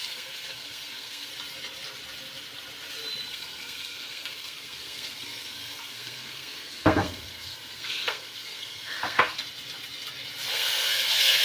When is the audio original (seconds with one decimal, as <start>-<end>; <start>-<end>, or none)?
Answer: 1.3-3.3; 9.4-10.5